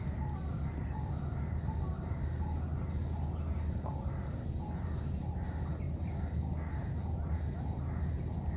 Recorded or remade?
recorded